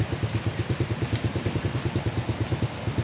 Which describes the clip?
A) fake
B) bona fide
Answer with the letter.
B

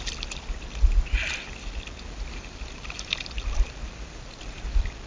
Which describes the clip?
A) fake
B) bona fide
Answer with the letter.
B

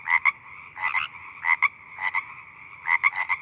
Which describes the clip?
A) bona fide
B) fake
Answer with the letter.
A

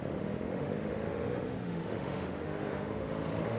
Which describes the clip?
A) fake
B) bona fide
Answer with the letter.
A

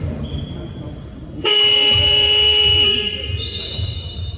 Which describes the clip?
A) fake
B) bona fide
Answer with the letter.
A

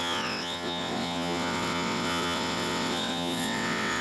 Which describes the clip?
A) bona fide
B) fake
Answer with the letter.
B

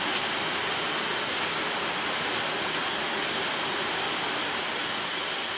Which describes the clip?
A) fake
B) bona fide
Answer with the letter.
B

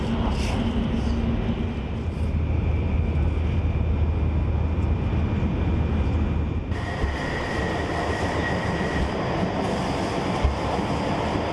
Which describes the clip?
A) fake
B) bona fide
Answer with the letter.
B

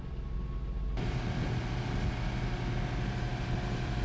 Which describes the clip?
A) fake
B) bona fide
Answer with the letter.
B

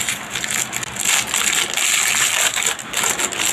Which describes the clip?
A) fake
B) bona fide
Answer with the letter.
B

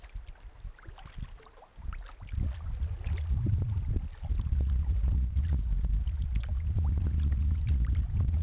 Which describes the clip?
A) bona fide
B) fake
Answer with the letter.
A